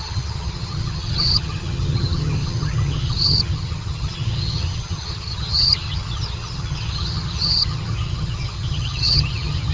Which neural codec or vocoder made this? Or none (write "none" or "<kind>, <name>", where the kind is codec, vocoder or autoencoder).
vocoder, HiFi-GAN